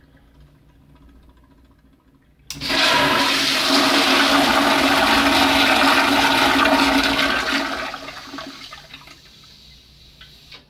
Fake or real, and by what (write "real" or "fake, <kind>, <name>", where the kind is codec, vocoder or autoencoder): real